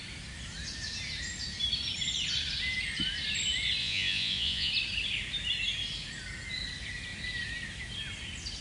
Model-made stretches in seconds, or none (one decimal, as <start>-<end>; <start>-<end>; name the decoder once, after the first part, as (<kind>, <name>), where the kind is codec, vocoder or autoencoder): 3.8-4.7 (vocoder, Vocos)